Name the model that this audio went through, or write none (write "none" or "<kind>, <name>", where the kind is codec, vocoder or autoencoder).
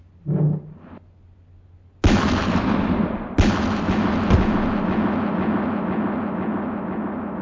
none